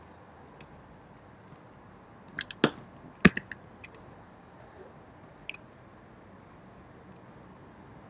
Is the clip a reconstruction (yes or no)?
no